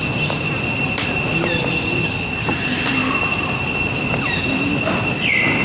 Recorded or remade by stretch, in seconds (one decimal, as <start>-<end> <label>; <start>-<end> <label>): 0.0-5.6 recorded